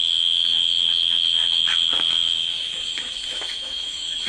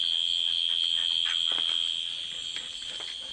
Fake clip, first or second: first